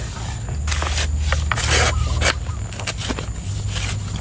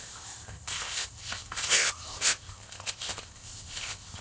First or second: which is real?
first